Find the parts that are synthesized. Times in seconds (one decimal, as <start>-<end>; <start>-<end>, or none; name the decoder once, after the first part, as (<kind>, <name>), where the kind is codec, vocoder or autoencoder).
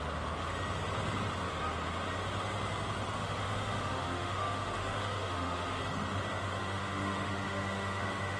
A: 3.2-5.8 (autoencoder, DAC-VAE); 6.4-8.4